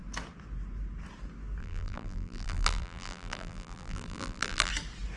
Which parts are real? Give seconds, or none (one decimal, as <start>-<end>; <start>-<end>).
0.0-1.6; 4.7-5.2